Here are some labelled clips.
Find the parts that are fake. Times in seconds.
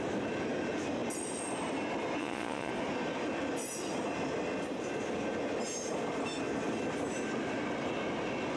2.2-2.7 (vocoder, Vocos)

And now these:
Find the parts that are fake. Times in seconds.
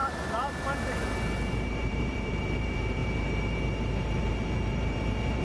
1.5-5.4 (vocoder, BigVGAN v2)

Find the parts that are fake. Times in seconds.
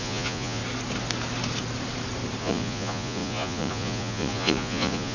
0.0-0.6 (vocoder, Vocos); 2.4-5.1